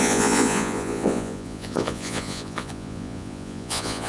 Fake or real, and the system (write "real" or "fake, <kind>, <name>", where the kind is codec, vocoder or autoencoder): fake, vocoder, Vocos